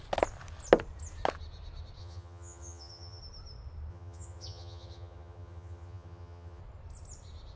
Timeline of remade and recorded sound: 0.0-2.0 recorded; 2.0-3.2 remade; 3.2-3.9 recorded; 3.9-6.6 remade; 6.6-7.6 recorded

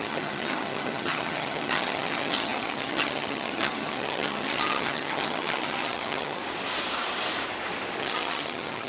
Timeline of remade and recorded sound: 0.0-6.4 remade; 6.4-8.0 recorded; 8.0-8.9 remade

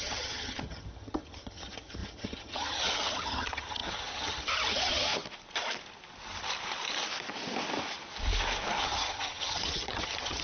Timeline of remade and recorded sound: 0.0-5.1 remade; 5.1-8.8 recorded; 8.8-10.4 remade